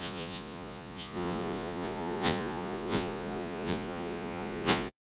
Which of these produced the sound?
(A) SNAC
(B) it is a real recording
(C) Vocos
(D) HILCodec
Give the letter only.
C